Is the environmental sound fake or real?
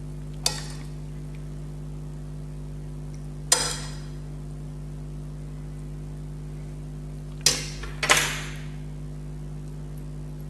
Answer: real